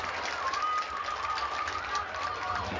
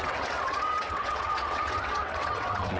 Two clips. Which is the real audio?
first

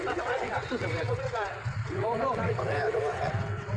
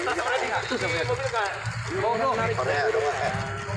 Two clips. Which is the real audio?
second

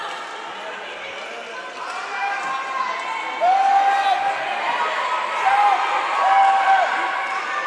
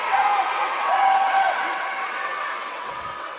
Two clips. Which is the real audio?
first